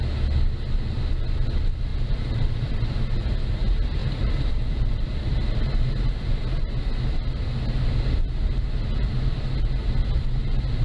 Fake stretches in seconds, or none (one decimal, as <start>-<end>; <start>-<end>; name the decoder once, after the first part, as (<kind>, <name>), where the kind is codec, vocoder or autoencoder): 1.9-3.0 (vocoder, BigVGAN v2); 4.0-6.3